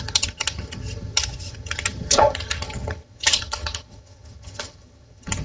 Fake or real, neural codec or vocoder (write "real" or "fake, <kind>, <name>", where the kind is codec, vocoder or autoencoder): fake, vocoder, HiFi-GAN